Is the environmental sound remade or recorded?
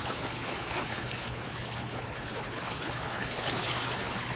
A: remade